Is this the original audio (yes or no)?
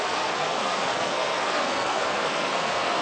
no